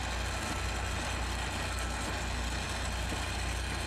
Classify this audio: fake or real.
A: real